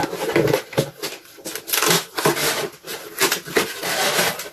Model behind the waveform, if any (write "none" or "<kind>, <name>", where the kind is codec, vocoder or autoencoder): none